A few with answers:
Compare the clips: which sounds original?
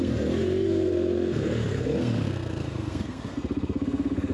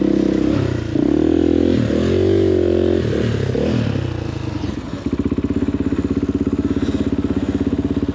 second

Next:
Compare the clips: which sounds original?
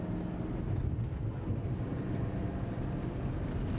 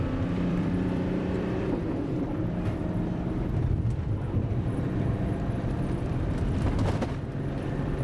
first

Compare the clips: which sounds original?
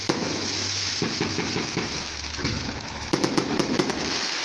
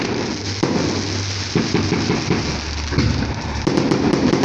second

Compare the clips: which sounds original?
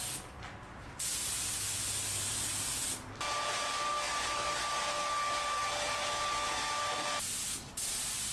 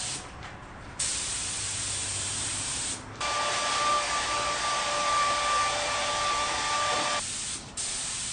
first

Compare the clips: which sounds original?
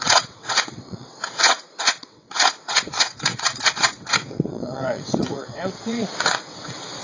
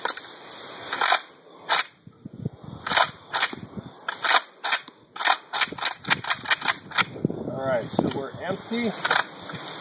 second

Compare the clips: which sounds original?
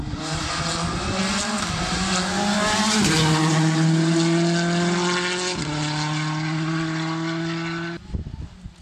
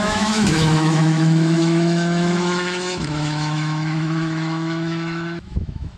first